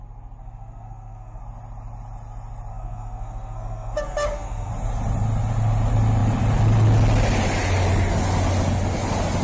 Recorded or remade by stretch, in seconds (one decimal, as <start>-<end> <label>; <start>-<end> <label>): 0.0-0.4 recorded; 0.4-1.4 remade; 1.4-2.7 recorded; 2.7-4.7 remade; 4.7-9.4 recorded